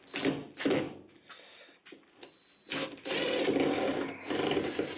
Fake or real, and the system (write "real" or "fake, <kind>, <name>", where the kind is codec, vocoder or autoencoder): real